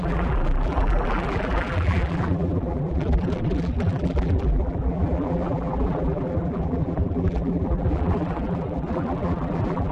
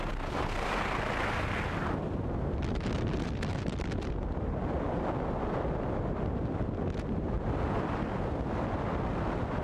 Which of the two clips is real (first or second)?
second